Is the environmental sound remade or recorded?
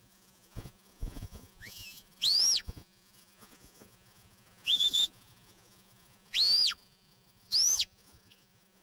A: remade